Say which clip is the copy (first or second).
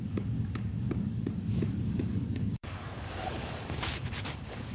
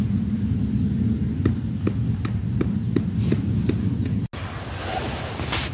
first